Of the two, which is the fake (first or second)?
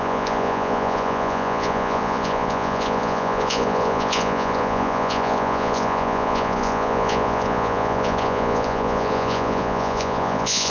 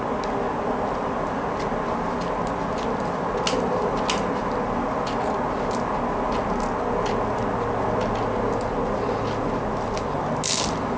first